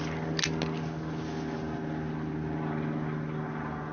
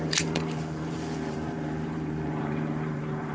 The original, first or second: first